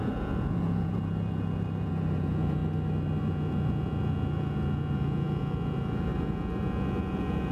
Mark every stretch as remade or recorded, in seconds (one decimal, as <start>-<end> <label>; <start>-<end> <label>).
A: 0.0-2.6 remade; 2.6-3.2 recorded; 3.2-7.5 remade